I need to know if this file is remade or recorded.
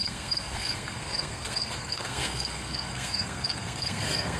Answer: remade